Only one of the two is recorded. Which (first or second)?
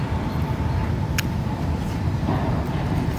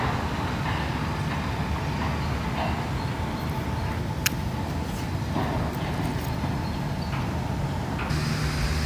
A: second